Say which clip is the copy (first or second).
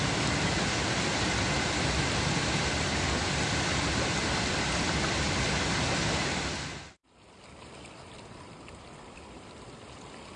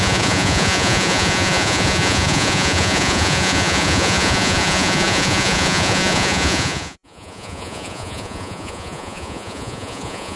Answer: second